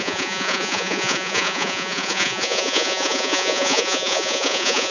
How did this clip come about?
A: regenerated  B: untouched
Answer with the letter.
A